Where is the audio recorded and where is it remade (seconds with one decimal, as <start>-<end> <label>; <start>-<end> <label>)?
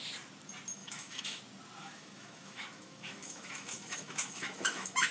0.0-0.8 recorded; 0.8-1.4 remade; 1.4-1.8 recorded; 1.8-5.1 remade